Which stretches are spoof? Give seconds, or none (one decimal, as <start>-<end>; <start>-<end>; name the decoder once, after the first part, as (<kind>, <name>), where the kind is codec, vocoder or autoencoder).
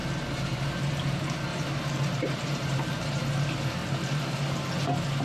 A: 1.5-3.2 (vocoder, BigVGAN v2); 3.8-4.6